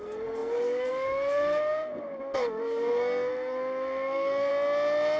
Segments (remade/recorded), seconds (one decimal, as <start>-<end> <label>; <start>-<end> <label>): 0.0-4.5 remade; 4.5-5.2 recorded